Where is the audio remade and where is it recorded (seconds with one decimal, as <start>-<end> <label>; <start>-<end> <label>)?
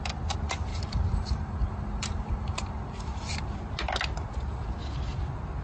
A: 0.0-0.7 recorded; 0.7-3.4 remade; 3.4-5.6 recorded